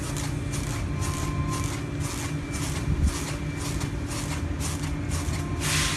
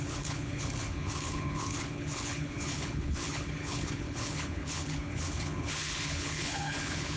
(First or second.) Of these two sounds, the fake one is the second